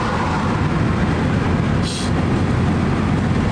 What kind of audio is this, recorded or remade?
recorded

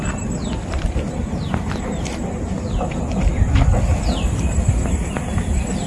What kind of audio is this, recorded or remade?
recorded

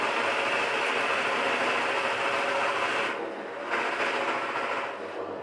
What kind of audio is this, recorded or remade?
recorded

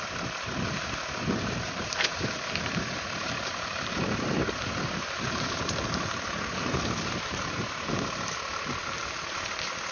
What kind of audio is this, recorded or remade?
remade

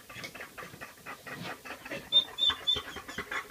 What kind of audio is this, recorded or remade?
recorded